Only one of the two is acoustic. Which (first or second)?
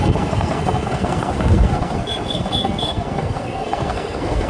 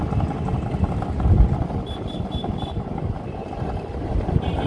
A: second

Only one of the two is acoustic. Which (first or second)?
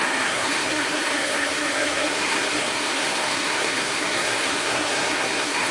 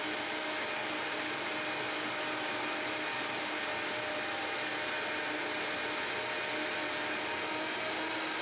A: second